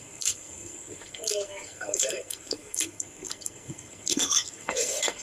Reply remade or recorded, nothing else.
remade